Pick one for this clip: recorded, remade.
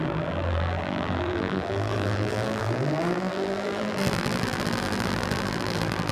remade